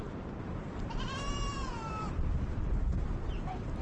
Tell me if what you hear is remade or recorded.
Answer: remade